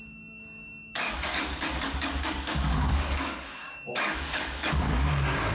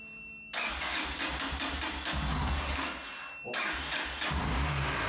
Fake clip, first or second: first